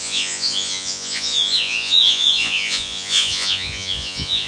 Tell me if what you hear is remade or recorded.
remade